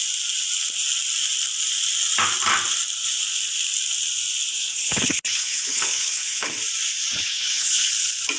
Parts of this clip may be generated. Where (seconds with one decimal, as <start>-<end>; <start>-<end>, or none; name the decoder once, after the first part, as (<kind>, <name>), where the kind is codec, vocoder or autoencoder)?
4.5-6.6 (codec, HILCodec); 7.2-7.9